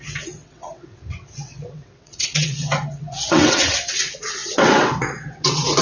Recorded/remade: remade